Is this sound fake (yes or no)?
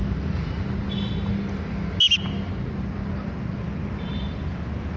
no